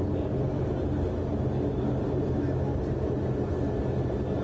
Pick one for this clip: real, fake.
real